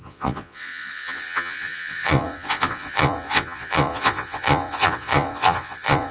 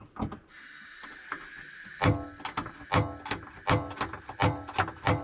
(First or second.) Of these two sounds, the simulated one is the first